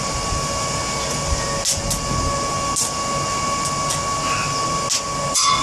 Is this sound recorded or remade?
recorded